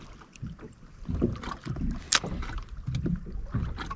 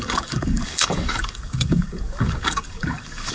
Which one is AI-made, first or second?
second